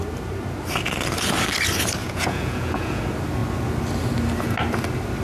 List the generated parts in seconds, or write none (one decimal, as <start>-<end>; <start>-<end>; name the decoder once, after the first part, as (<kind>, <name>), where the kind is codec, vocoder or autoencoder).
2.0-3.0 (vocoder, Vocos)

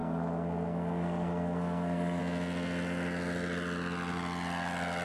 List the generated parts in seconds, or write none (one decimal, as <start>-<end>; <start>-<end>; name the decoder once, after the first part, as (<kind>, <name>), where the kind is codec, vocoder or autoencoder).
0.0-2.2 (codec, SNAC)

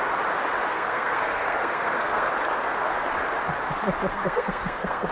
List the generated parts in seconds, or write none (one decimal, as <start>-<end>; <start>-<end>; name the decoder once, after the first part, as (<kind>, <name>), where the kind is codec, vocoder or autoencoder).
0.7-2.3 (codec, SNAC); 4.1-5.1